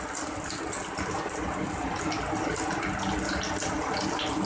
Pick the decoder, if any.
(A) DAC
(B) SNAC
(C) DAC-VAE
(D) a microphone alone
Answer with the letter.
D